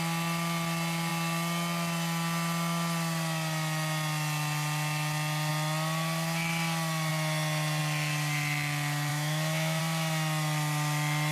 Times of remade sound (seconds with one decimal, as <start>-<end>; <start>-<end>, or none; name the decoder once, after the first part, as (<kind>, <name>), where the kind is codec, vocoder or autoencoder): 9.1-9.8 (autoencoder, DAC-VAE)